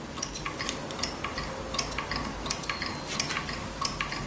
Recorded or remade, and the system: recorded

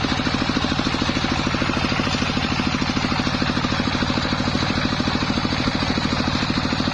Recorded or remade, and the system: remade, vocoder, BigVGAN v2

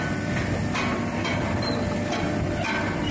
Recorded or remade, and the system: recorded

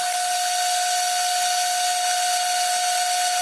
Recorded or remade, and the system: recorded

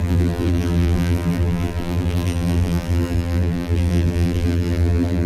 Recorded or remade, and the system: remade, vocoder, BigVGAN v2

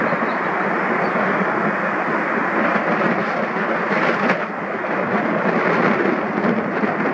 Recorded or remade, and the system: recorded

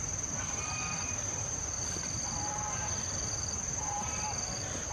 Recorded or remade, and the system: recorded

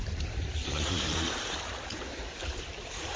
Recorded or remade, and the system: remade, vocoder, BigVGAN v2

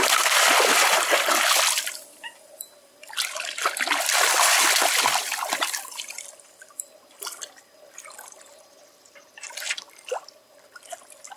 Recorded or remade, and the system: remade, vocoder, BigVGAN v2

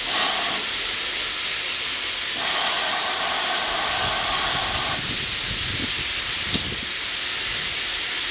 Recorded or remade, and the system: recorded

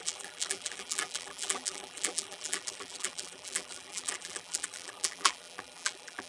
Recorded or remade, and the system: remade, vocoder, BigVGAN v2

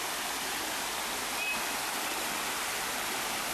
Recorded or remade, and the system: recorded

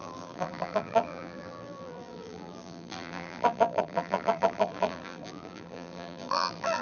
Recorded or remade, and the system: remade, vocoder, BigVGAN v2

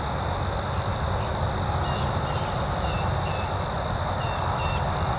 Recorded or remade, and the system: recorded